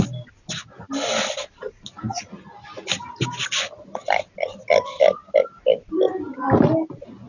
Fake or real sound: real